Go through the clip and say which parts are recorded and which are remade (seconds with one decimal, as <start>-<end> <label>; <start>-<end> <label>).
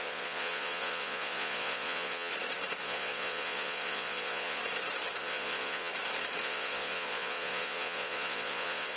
0.0-2.3 remade; 2.3-2.8 recorded; 2.8-4.6 remade; 4.6-5.2 recorded; 5.2-5.9 remade; 5.9-6.4 recorded; 6.4-9.0 remade